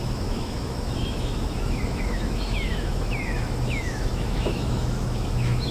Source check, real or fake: fake